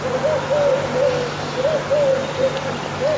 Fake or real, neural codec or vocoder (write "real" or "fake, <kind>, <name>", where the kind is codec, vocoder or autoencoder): real